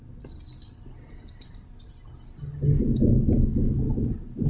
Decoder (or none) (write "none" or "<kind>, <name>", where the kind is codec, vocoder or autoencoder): none